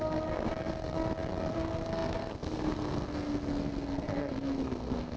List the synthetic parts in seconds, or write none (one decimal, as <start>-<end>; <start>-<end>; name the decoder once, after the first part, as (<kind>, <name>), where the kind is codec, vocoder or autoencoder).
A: 0.0-0.5 (codec, SNAC); 1.5-5.2